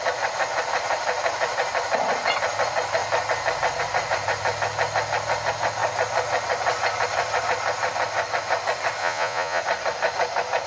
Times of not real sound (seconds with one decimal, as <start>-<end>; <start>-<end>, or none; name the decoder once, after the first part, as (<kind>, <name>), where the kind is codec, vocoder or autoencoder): 9.0-9.6 (vocoder, Vocos)